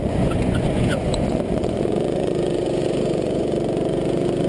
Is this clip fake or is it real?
fake